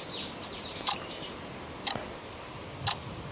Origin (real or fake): real